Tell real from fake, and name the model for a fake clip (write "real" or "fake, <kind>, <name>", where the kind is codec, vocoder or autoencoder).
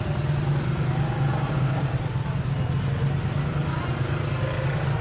real